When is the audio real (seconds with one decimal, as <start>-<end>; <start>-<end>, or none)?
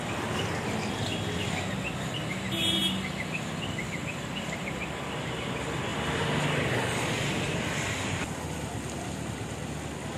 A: 0.0-10.2